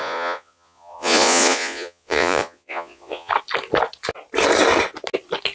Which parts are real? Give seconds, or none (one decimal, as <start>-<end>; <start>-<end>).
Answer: 3.3-5.5